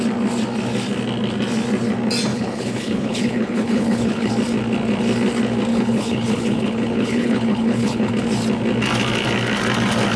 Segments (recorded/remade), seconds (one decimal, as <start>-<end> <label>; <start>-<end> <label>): 0.0-2.3 recorded; 2.3-4.3 remade; 4.3-5.7 recorded; 5.7-8.1 remade; 8.1-10.2 recorded